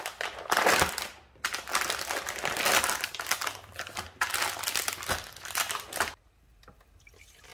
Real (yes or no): yes